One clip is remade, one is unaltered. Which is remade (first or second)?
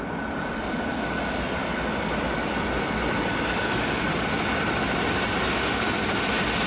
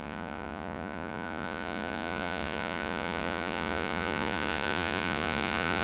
second